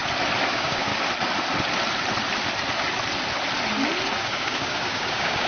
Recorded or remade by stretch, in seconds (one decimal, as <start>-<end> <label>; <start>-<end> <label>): 0.0-0.5 recorded; 0.5-0.9 remade; 0.9-4.2 recorded; 4.2-5.5 remade